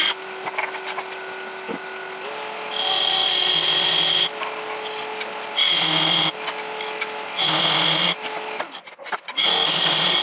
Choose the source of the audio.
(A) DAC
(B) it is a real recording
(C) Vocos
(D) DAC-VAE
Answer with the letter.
B